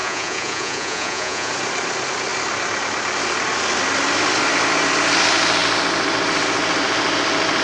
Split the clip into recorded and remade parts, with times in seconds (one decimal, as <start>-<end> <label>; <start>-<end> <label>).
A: 0.0-1.5 remade; 1.5-7.6 recorded